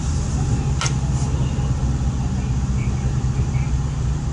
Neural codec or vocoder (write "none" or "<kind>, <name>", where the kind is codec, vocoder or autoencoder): none